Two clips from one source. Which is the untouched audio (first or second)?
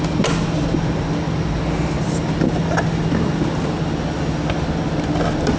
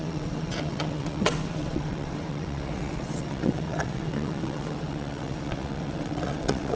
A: first